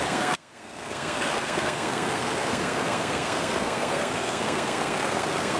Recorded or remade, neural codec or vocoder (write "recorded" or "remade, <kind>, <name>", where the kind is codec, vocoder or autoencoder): remade, codec, SNAC